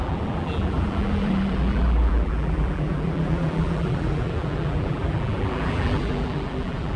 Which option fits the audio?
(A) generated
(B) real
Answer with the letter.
A